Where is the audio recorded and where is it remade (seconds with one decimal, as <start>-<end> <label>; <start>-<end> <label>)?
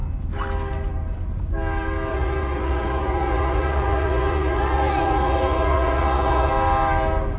0.0-2.1 recorded; 2.1-6.5 remade; 6.5-7.4 recorded